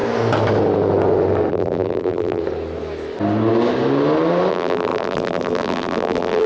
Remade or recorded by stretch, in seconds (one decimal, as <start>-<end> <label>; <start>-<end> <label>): 0.0-1.5 recorded; 1.5-2.4 remade; 2.4-4.5 recorded; 4.5-6.5 remade